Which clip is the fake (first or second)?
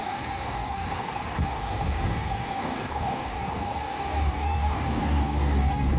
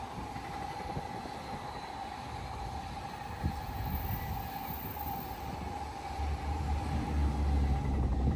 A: first